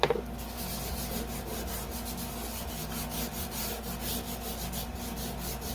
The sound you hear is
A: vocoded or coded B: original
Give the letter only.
B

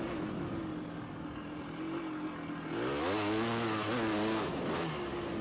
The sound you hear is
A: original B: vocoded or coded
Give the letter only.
A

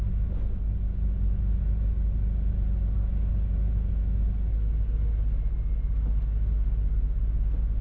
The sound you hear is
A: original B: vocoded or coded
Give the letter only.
A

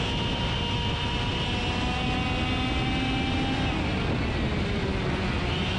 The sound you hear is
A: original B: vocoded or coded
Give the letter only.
A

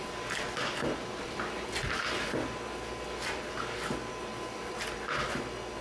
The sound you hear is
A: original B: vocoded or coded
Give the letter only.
A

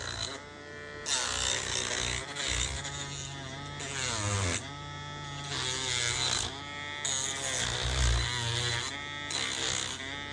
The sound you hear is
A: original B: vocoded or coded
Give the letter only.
A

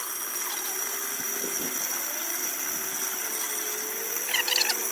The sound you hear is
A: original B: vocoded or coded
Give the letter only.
A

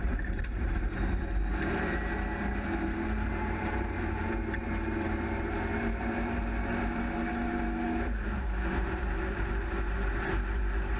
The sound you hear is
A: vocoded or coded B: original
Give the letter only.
A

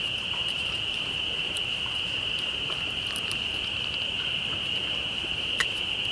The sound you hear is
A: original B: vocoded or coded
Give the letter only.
B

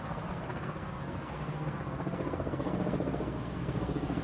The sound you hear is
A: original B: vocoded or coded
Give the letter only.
B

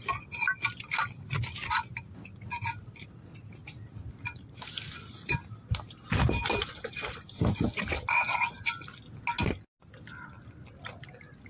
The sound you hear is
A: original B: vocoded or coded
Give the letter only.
A